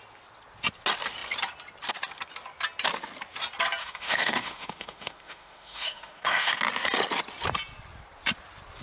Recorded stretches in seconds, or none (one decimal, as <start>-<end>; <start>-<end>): 0.0-3.8; 6.6-8.8